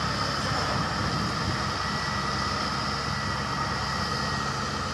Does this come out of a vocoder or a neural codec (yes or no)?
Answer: no